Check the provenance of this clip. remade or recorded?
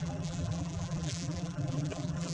remade